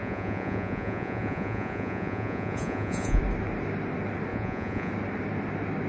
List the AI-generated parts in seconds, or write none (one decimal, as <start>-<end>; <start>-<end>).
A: 0.0-3.2; 4.3-4.9